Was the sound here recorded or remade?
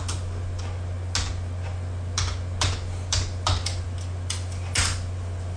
recorded